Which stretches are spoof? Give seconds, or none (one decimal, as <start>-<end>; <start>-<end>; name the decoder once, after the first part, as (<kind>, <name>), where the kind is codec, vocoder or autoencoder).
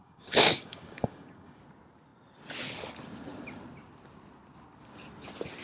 0.0-1.6 (codec, DAC)